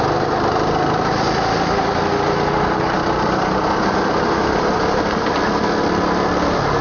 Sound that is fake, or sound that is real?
real